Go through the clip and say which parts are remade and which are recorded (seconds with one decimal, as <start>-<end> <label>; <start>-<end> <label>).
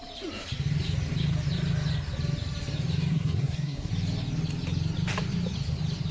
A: 0.0-3.1 recorded; 3.1-3.9 remade; 3.9-6.1 recorded